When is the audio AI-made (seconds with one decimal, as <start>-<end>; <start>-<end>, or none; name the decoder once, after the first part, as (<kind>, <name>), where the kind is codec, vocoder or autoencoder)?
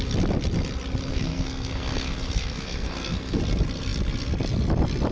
1.1-3.4 (codec, SNAC)